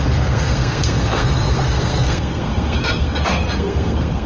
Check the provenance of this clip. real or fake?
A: fake